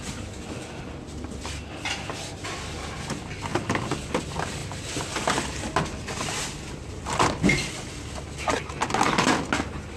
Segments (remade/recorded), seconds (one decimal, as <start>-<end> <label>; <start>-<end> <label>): 0.0-10.0 recorded